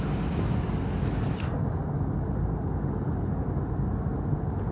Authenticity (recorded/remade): recorded